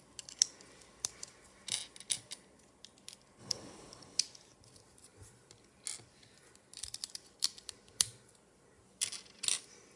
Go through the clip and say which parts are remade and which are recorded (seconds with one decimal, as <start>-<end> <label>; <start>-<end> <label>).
0.0-3.4 recorded; 3.4-4.2 remade; 4.2-10.0 recorded